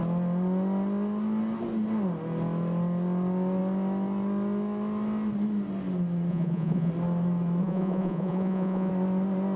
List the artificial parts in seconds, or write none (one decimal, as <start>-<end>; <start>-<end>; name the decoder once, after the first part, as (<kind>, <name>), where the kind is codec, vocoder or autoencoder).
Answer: 6.3-6.9 (vocoder, Vocos); 7.6-8.9